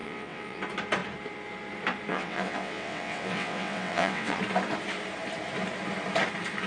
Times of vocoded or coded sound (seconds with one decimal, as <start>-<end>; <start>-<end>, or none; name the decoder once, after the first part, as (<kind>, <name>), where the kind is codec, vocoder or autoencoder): 0.0-0.6 (vocoder, WaveNeXt); 2.1-4.4

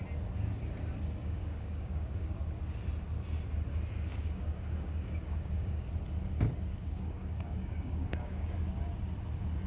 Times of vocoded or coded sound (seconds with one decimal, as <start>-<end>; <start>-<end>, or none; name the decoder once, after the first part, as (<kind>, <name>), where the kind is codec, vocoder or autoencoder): 1.2-2.4 (codec, DAC); 4.1-5.9; 6.7-8.6

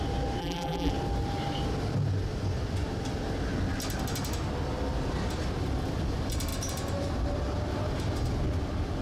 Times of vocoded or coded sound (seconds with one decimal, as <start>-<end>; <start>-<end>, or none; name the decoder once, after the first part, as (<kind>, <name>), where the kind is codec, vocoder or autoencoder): 0.4-0.9 (vocoder, BigVGAN v2)

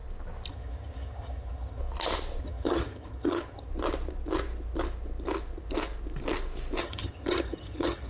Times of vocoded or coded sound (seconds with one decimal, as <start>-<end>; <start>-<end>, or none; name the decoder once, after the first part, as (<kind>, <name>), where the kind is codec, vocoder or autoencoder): 0.5-1.8 (vocoder, HiFi-GAN); 2.4-3.7; 6.8-8.1

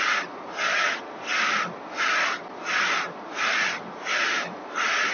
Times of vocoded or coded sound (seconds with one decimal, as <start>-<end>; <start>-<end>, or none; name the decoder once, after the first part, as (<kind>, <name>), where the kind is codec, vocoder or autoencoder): none

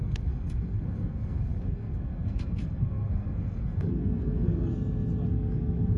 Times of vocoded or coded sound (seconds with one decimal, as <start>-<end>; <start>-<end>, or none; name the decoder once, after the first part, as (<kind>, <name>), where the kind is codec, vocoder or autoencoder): 0.0-4.7 (codec, SNAC); 5.3-6.0

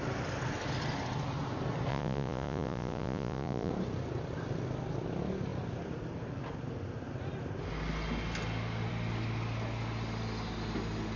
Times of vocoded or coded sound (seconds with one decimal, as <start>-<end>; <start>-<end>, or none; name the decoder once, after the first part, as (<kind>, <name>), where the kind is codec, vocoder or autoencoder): 1.9-3.7 (vocoder, Vocos)